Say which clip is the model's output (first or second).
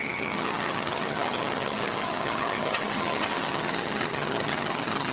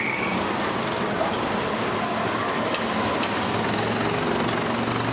first